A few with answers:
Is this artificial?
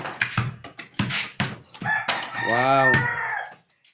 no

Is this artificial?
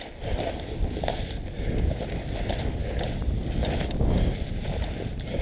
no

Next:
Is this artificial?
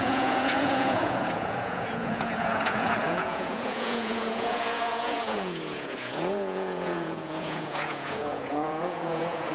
yes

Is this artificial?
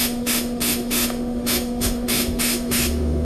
yes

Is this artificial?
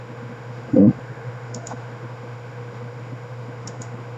yes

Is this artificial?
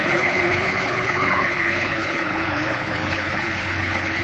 yes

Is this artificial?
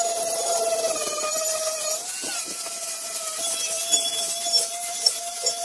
no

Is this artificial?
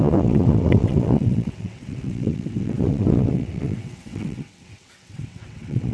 yes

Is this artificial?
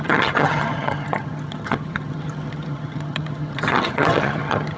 yes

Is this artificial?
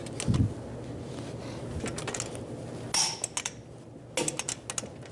no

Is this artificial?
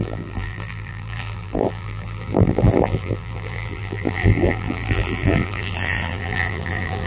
yes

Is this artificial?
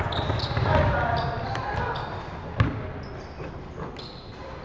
no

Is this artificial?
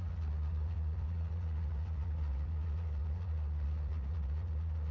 yes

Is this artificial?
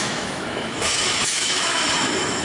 yes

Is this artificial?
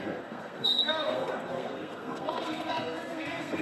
yes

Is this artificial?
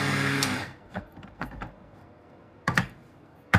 yes